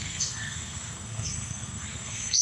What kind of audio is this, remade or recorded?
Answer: remade